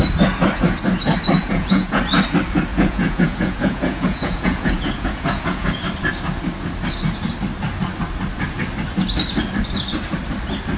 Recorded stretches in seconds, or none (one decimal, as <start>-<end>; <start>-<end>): 0.0-1.4; 2.0-2.7; 5.8-10.8